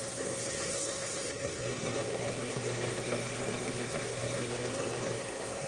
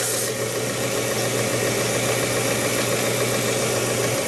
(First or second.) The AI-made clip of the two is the first